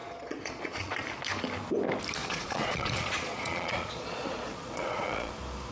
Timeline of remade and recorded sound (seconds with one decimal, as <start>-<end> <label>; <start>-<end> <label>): 0.0-1.0 remade; 1.0-2.2 recorded; 2.2-5.3 remade; 5.3-5.7 recorded